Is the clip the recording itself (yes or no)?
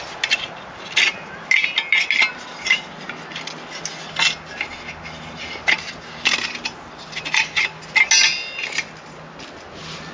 yes